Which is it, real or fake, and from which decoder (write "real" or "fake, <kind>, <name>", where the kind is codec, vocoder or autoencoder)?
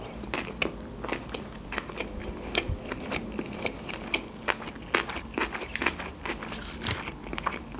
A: real